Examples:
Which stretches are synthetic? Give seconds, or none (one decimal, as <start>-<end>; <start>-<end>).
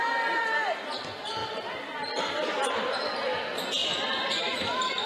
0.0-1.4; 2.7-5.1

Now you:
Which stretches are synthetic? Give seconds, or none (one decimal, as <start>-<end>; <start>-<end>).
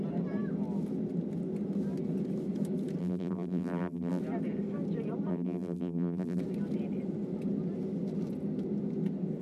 3.0-4.2; 5.3-6.4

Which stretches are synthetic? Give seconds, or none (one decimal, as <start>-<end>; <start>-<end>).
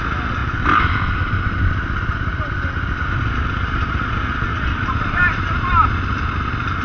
4.5-5.7